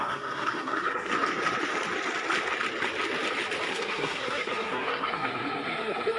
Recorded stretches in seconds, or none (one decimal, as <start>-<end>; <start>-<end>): 1.1-3.7

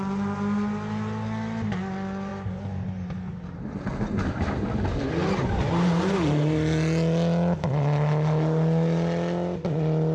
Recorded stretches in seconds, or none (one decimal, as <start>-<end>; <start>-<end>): 0.0-10.1

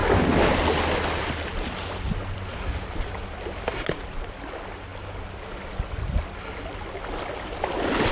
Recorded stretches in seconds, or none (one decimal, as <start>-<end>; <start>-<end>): 0.0-8.1

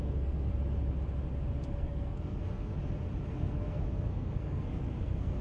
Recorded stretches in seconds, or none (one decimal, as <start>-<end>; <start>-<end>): 0.5-1.7; 2.7-3.3